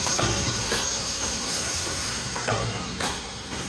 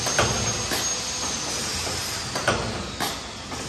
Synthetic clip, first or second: first